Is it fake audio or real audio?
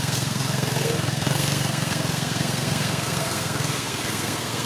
fake